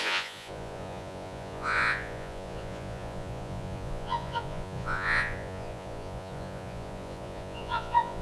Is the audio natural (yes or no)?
no